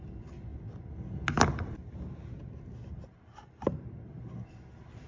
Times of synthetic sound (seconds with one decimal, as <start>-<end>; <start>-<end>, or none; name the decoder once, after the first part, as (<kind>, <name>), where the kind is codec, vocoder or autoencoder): none